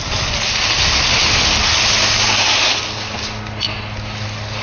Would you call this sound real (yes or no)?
yes